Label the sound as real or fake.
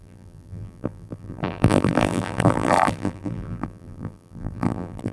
fake